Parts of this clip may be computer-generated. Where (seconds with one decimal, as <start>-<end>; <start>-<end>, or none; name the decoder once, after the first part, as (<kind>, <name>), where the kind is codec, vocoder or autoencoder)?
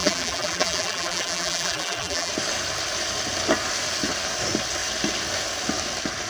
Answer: 0.0-2.3 (vocoder, BigVGAN v2)